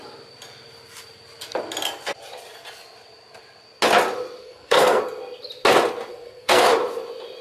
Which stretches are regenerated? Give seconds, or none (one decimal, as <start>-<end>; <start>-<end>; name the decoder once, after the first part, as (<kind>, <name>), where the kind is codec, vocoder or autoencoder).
4.4-5.0 (codec, SNAC); 6.1-6.7